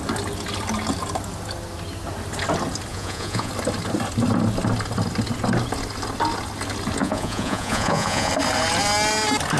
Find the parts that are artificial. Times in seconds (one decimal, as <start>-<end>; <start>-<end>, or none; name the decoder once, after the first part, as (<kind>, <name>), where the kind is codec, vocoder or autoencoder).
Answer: 2.9-3.5 (vocoder, Vocos); 7.0-8.3